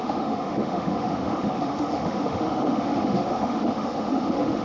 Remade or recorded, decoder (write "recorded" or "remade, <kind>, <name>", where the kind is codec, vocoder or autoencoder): remade, autoencoder, DAC-VAE